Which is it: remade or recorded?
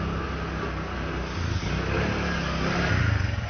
recorded